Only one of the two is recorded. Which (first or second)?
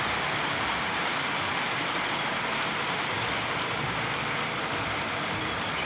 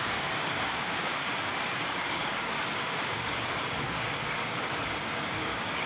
first